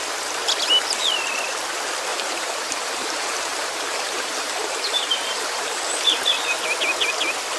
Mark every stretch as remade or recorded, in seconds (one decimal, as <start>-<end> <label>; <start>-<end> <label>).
0.0-2.1 recorded; 2.1-5.9 remade; 5.9-7.6 recorded